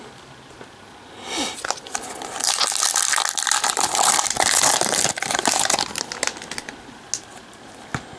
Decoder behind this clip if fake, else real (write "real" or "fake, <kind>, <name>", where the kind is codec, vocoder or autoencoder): real